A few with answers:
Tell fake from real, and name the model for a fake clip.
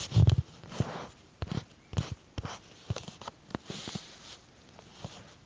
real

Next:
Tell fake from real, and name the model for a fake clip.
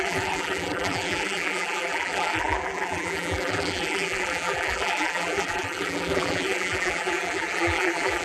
fake, vocoder, BigVGAN v2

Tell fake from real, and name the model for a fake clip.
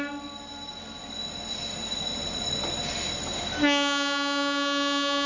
real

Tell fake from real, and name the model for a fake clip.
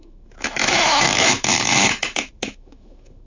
fake, autoencoder, DAC-VAE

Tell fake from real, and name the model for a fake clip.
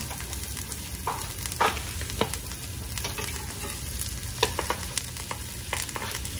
real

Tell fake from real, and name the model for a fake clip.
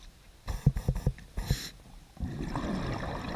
real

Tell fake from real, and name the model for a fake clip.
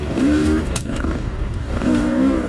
fake, codec, DAC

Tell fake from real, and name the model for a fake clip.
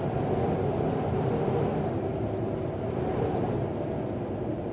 real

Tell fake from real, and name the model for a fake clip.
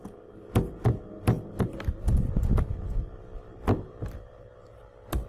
real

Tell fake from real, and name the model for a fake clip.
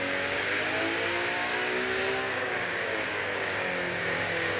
fake, codec, DAC